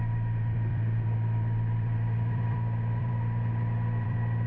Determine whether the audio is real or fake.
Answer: fake